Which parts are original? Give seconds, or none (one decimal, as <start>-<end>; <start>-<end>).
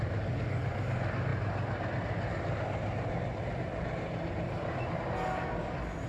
0.0-6.1